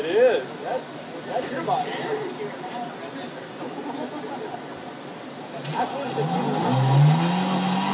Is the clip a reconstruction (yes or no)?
no